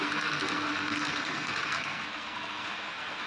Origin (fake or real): fake